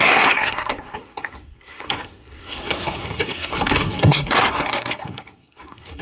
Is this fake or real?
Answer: fake